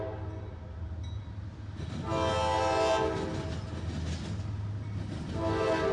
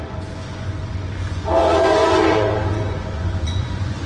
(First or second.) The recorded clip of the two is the first